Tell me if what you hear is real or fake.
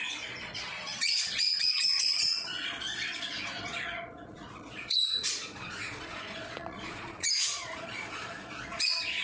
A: fake